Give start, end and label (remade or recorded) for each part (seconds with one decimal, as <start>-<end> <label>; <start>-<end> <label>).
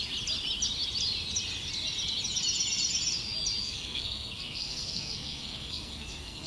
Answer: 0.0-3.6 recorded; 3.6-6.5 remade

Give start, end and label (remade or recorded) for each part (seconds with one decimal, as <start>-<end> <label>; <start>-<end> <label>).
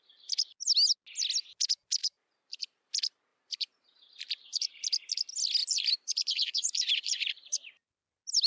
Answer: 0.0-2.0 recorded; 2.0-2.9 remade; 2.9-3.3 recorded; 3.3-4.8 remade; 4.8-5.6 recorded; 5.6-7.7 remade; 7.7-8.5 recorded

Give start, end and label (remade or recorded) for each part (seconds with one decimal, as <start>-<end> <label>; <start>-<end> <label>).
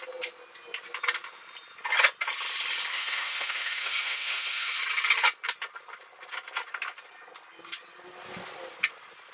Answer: 0.0-2.9 recorded; 2.9-4.8 remade; 4.8-9.3 recorded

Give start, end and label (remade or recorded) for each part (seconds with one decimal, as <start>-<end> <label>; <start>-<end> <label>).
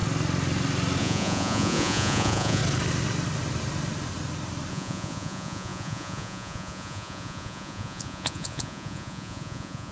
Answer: 0.0-1.0 recorded; 1.0-2.6 remade; 2.6-4.7 recorded; 4.7-9.9 remade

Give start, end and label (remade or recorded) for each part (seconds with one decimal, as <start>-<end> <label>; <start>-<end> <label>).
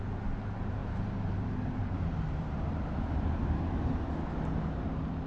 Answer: 0.0-0.8 recorded; 0.8-4.0 remade; 4.0-5.3 recorded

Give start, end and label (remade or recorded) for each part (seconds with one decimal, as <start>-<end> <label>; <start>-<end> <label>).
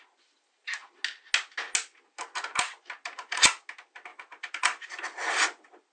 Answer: 0.0-4.1 recorded; 4.1-5.0 remade; 5.0-5.9 recorded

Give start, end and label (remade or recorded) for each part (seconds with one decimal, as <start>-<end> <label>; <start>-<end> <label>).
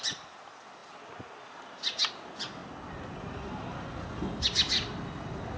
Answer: 0.0-5.6 recorded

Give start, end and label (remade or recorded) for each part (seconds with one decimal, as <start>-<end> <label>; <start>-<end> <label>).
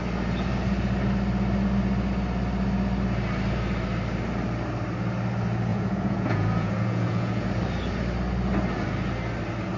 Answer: 0.0-5.7 recorded; 5.7-7.5 remade; 7.5-9.8 recorded